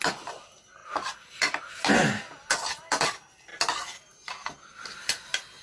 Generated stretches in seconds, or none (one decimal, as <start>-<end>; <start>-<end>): none